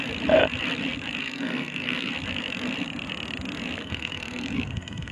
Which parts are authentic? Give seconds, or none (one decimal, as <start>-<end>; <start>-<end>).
0.0-1.2; 2.1-3.8